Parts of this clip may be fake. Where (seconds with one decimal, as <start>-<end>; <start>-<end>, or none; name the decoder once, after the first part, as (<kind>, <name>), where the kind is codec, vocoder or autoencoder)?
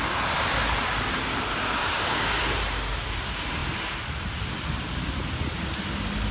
1.8-2.4 (codec, DAC)